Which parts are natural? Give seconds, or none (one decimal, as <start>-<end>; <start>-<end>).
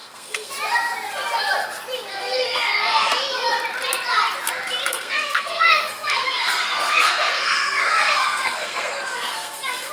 0.5-2.1; 3.1-4.9